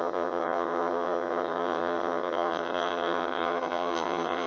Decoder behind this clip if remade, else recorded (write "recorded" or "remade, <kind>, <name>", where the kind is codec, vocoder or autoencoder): remade, vocoder, HiFi-GAN